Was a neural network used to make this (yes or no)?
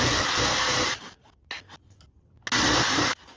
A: no